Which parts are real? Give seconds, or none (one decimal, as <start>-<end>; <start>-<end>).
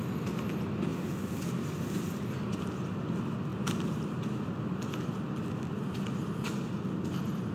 0.0-0.9; 1.5-3.5; 4.4-7.5